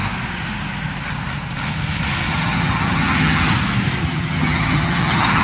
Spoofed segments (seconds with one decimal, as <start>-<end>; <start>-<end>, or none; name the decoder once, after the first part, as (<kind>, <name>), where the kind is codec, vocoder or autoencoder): 2.3-3.5 (vocoder, HiFi-GAN); 4.0-5.4